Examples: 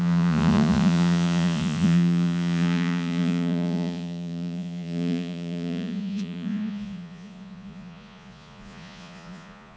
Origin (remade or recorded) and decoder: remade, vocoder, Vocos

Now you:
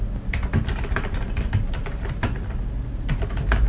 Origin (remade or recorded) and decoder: recorded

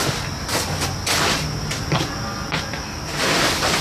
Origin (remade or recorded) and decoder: recorded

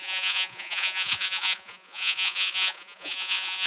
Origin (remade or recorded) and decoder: remade, vocoder, Vocos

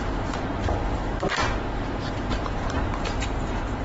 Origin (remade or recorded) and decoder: remade, vocoder, BigVGAN v2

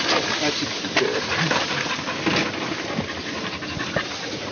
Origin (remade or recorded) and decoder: recorded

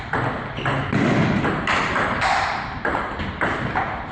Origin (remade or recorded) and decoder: recorded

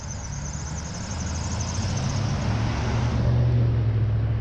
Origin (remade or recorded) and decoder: recorded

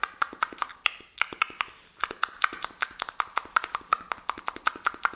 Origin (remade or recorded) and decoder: recorded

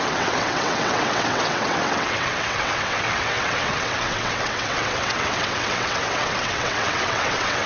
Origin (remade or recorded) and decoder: remade, vocoder, WaveNeXt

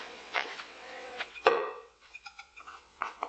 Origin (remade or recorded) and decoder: remade, vocoder, WaveNeXt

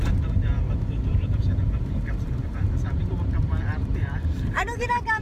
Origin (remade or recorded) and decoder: remade, vocoder, BigVGAN v2